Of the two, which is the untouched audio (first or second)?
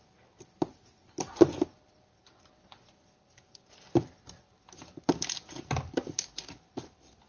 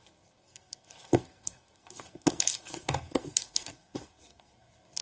first